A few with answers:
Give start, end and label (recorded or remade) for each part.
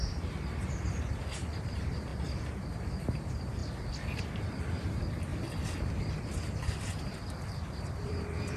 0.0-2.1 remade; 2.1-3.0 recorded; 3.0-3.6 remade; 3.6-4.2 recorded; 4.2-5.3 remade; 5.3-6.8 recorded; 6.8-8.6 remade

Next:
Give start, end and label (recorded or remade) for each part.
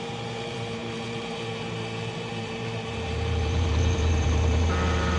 0.0-5.2 remade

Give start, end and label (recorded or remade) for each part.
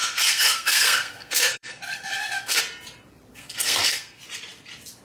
0.0-2.6 remade; 2.6-3.3 recorded; 3.3-4.2 remade; 4.2-5.0 recorded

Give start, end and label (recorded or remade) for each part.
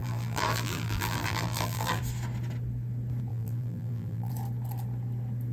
0.0-2.0 remade; 2.0-3.3 recorded; 3.3-4.3 remade; 4.3-5.5 recorded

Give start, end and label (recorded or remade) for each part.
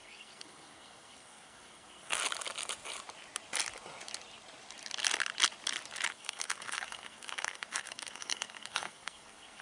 0.0-2.2 remade; 2.2-6.1 recorded; 6.1-9.6 remade